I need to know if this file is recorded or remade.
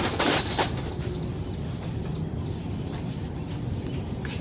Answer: recorded